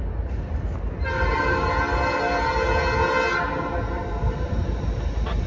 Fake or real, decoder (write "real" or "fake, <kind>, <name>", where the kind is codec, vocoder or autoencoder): real